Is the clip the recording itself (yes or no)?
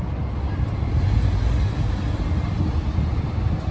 yes